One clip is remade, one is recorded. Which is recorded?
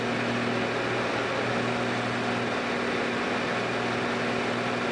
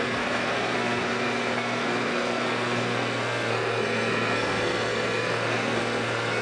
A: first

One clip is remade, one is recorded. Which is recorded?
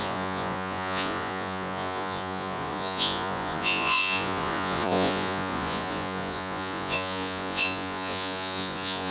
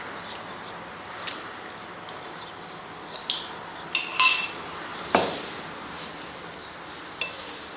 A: second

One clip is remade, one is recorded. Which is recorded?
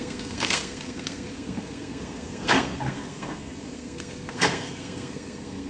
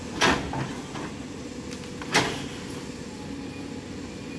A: second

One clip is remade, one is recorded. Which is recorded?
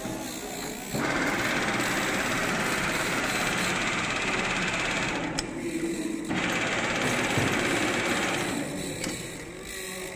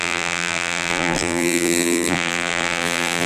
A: first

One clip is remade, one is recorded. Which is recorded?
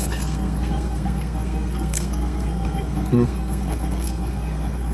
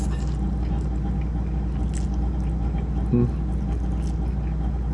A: second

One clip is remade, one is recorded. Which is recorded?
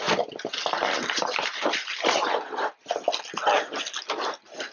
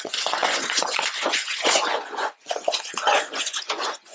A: first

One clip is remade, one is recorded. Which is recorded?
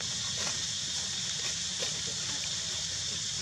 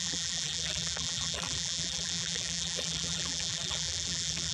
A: first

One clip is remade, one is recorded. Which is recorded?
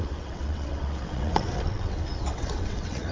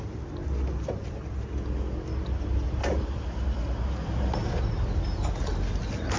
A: second